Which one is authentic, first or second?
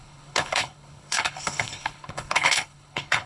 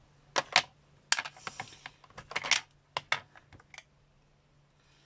second